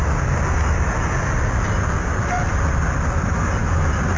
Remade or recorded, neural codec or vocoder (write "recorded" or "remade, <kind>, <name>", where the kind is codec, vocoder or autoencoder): recorded